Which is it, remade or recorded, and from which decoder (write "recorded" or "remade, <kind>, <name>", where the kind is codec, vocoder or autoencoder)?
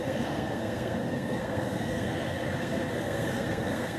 remade, codec, SNAC